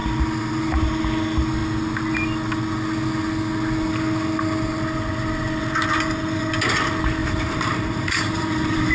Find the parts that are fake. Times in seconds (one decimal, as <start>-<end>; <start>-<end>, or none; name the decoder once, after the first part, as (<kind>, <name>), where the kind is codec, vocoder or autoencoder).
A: 7.2-8.9 (vocoder, BigVGAN v2)